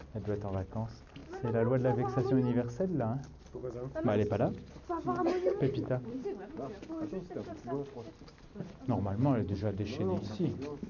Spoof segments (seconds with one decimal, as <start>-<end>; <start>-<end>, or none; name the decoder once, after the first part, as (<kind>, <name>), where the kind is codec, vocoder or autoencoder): none